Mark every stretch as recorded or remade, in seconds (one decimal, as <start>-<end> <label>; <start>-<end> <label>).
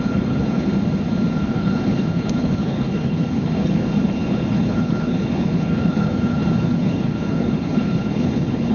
0.0-0.7 remade; 0.7-1.3 recorded; 1.3-8.7 remade